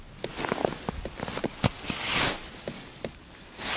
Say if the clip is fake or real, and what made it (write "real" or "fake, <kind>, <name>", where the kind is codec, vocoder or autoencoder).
real